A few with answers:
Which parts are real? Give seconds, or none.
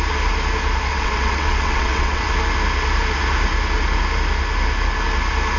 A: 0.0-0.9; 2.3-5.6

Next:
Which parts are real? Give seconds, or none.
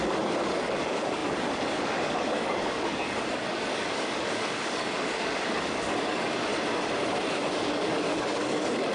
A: 6.5-7.3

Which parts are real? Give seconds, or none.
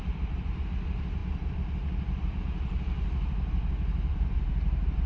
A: 0.0-4.1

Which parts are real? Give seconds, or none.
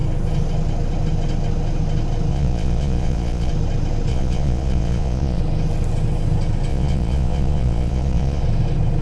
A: 0.0-2.3; 3.5-4.1; 5.4-6.7; 8.4-9.0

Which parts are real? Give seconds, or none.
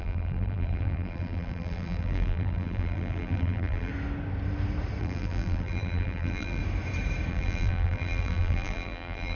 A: 3.9-5.0; 6.6-7.3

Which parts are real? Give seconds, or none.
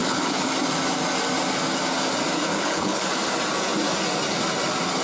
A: 0.5-2.5; 3.1-5.0